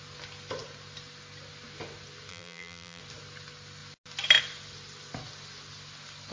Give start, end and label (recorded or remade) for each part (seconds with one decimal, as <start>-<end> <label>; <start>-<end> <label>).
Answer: 0.0-2.3 recorded; 2.3-3.0 remade; 3.0-6.3 recorded